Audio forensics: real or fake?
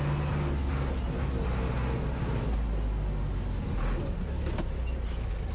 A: real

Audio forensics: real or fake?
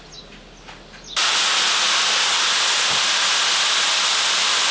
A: real